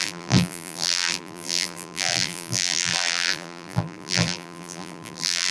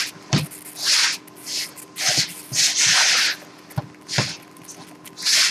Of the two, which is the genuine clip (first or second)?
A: second